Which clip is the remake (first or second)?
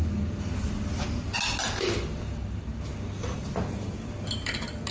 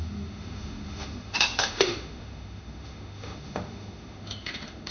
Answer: second